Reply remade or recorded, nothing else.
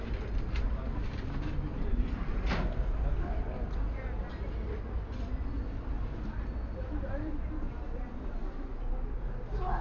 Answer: recorded